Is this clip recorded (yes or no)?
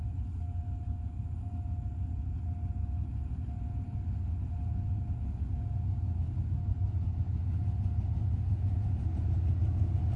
yes